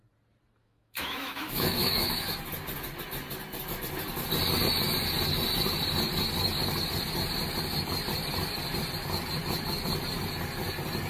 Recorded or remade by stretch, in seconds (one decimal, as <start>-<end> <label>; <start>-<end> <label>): 0.0-0.6 recorded; 0.6-2.4 remade; 2.4-11.1 recorded